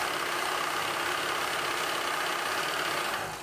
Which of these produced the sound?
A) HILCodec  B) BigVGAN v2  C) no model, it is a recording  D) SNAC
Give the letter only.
C